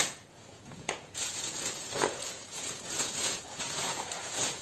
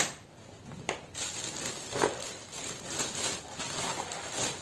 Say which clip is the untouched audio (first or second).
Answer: second